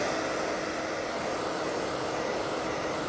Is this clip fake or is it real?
real